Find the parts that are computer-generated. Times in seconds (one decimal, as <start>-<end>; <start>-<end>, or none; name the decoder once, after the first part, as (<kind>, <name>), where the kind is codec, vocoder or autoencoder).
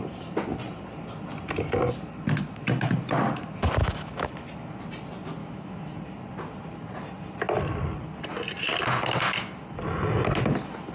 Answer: 3.8-4.3 (autoencoder, DAC-VAE); 5.4-6.0